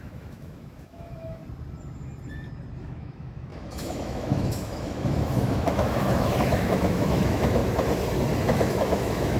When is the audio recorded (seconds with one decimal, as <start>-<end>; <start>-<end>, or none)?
1.4-2.8; 7.6-8.4